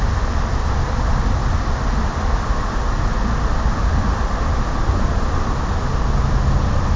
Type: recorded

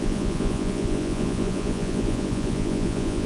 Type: remade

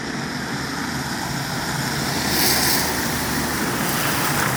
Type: recorded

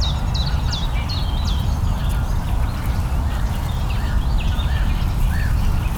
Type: recorded